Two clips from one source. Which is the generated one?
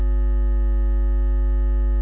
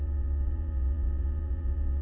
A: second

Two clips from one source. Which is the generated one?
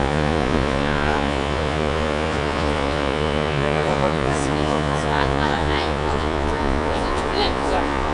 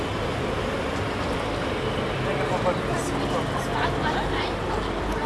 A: first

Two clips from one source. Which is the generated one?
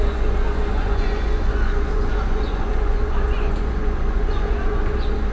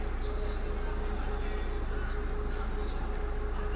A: first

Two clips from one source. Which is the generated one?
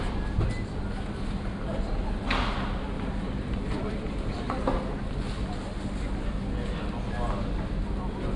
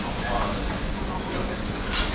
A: second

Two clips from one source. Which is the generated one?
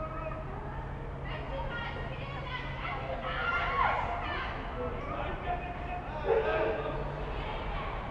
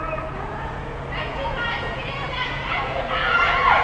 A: second